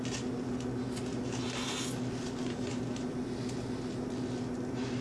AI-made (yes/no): no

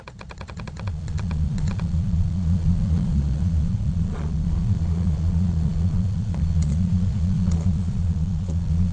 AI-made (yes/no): yes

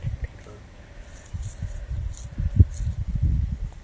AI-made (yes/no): no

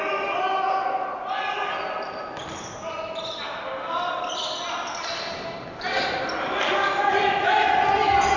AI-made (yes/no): no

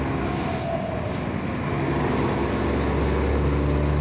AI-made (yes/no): no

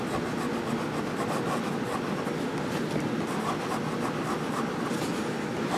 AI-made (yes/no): no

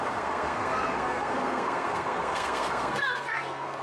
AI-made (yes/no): yes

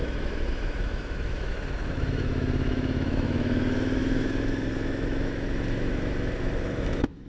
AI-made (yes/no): yes